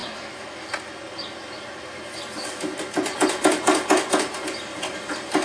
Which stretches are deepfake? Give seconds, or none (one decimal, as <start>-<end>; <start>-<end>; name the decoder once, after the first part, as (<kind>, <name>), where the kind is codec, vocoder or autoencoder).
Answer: 0.0-0.7 (autoencoder, DAC-VAE)